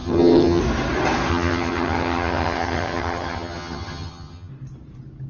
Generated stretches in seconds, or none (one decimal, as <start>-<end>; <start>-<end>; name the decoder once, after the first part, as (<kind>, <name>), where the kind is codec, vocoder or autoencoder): 0.0-0.6 (vocoder, HiFi-GAN); 1.3-4.5